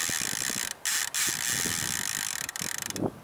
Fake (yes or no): no